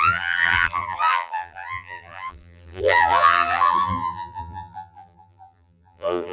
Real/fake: fake